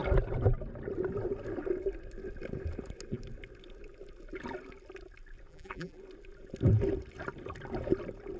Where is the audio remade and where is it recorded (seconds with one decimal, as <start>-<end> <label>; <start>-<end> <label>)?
0.0-5.5 recorded; 5.5-6.0 remade; 6.0-8.4 recorded